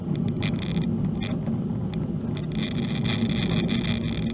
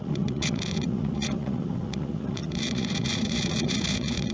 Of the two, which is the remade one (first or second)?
second